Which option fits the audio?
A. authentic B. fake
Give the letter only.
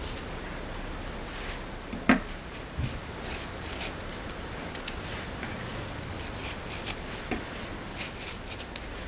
A